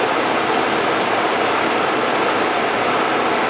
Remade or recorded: recorded